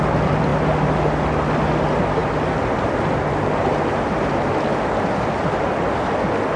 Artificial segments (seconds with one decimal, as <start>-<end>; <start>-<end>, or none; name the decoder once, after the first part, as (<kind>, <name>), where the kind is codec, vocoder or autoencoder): none